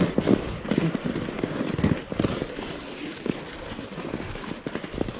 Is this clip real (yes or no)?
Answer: yes